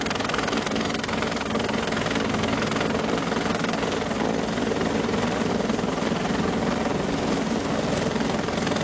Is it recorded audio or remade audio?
recorded